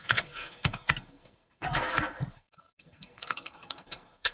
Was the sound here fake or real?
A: fake